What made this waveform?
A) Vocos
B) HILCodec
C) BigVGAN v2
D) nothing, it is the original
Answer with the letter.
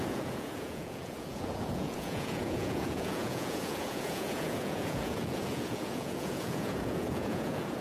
A